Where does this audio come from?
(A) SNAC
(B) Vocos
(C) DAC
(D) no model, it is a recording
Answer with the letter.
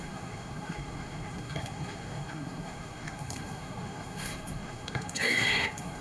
A